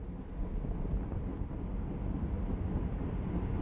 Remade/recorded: recorded